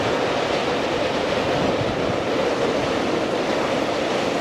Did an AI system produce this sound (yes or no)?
no